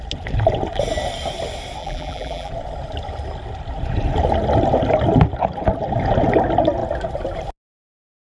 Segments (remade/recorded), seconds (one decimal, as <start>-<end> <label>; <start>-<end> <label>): 0.0-1.8 recorded; 1.8-2.5 remade; 2.5-8.3 recorded